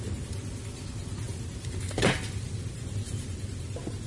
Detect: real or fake real